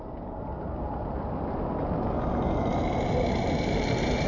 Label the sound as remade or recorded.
recorded